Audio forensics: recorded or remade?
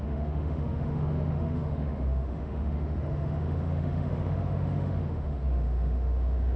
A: remade